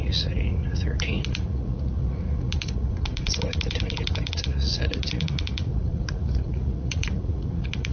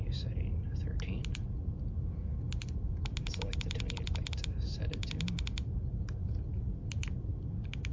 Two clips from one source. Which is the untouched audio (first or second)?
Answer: second